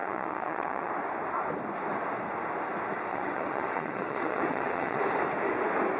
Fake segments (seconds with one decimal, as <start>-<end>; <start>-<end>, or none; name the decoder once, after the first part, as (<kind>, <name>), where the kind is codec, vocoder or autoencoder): 0.0-0.9 (vocoder, WaveNeXt); 3.1-5.0